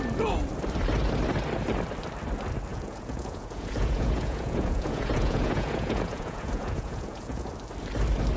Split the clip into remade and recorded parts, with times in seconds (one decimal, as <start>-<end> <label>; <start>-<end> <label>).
0.0-2.7 recorded; 2.7-7.5 remade; 7.5-8.4 recorded